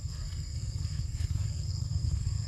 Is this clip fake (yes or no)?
yes